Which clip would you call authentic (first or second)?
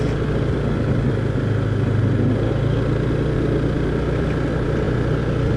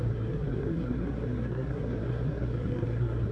first